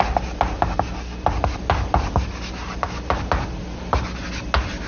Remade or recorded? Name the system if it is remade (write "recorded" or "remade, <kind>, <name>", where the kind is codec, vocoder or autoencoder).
recorded